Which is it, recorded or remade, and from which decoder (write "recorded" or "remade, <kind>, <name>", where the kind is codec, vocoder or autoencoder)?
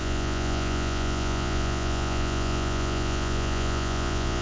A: remade, vocoder, Vocos